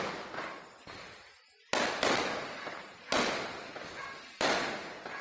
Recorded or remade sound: recorded